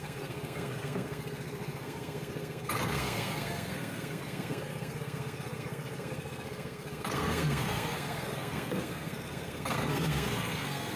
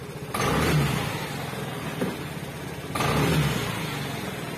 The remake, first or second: first